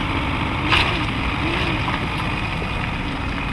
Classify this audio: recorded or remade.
recorded